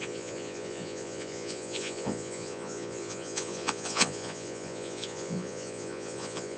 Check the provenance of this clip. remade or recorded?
remade